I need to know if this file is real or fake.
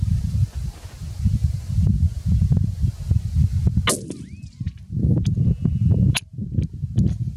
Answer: real